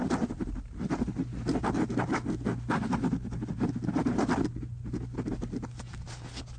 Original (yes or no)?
yes